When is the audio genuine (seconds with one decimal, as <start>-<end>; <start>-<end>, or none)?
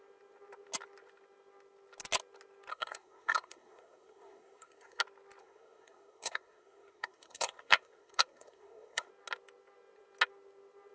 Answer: 0.0-2.7; 5.0-5.4; 9.1-10.9